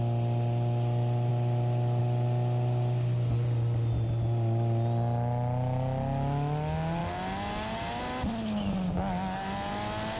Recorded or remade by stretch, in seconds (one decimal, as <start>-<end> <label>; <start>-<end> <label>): 0.0-10.2 recorded